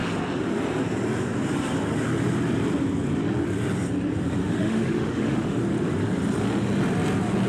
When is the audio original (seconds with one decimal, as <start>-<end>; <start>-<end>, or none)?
0.0-4.4; 5.6-7.5

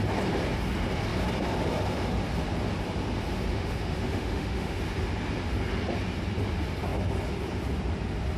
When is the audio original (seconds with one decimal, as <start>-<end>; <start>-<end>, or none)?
0.0-3.5; 4.8-8.4

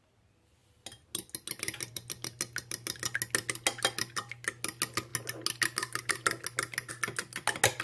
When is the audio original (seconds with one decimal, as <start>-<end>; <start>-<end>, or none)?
0.0-7.8